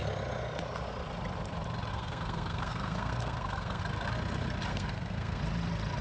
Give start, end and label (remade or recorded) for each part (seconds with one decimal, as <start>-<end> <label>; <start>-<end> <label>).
0.0-1.9 recorded; 1.9-3.8 remade; 3.8-4.7 recorded; 4.7-5.4 remade; 5.4-6.0 recorded